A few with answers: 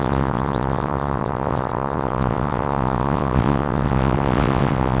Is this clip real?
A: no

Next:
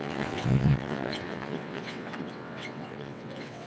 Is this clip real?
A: no